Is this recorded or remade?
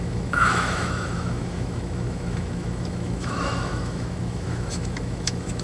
remade